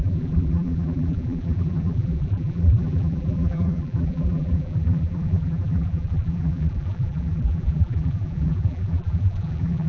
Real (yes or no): no